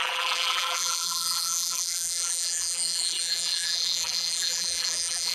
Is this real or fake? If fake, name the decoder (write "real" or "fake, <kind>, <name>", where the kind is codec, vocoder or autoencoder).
fake, vocoder, BigVGAN v2